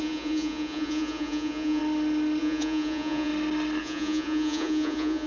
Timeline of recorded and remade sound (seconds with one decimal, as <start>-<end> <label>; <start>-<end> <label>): 0.0-1.8 remade; 1.8-2.4 recorded; 2.4-3.3 remade; 3.3-3.8 recorded; 3.8-5.3 remade